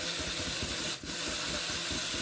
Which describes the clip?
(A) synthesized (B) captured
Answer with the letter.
B